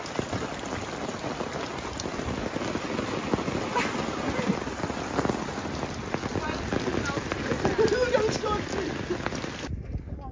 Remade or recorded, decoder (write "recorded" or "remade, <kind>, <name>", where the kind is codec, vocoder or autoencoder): recorded